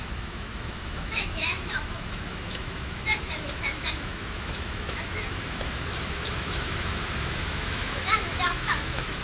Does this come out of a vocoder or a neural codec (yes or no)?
yes